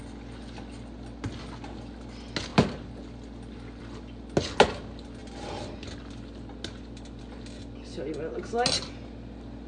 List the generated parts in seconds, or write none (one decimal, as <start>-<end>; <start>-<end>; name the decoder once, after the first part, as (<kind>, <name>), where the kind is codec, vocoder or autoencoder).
none